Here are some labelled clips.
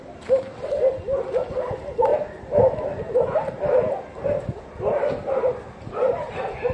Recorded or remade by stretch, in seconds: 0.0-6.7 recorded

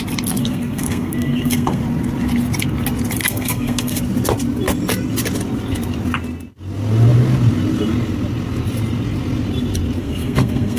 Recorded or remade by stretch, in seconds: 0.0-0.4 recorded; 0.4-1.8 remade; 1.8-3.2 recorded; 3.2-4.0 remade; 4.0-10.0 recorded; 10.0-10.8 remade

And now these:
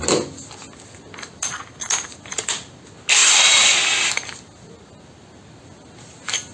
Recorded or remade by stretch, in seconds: 0.0-6.5 recorded